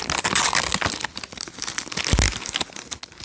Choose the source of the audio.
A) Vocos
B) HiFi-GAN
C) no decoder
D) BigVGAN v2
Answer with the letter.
C